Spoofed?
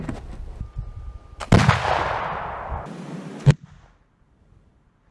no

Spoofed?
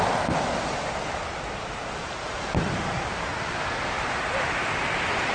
no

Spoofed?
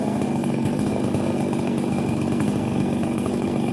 yes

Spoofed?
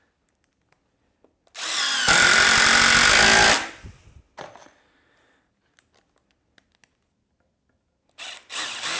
no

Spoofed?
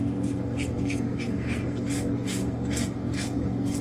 yes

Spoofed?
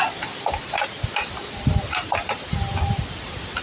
no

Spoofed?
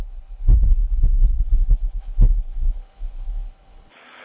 yes